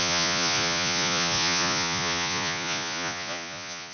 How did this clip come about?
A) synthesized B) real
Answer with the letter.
A